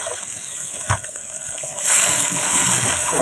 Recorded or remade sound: remade